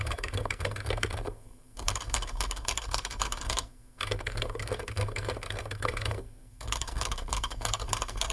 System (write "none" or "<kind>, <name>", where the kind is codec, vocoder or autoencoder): codec, SNAC